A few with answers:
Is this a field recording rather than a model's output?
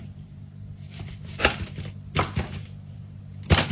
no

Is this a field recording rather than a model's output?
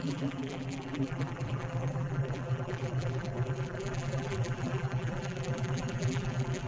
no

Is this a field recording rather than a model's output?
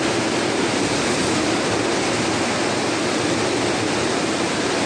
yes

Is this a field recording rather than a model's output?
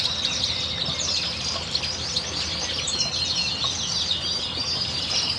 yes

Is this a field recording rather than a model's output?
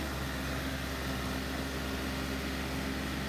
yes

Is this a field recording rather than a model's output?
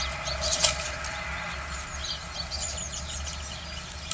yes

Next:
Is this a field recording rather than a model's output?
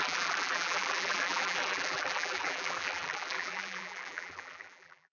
no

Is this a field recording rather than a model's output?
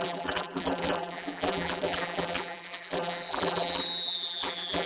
no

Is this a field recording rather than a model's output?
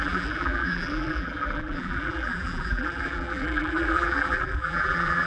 no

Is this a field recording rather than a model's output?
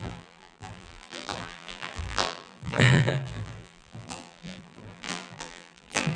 no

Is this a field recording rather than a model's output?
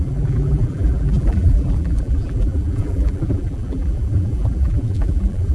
no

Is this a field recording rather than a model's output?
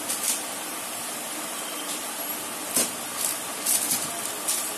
yes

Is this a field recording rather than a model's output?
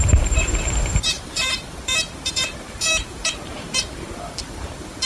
no